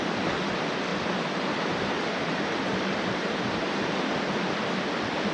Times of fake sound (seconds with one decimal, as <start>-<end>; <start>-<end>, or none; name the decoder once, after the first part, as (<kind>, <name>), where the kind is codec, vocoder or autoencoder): 0.9-4.1 (vocoder, BigVGAN v2)